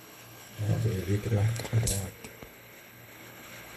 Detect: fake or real fake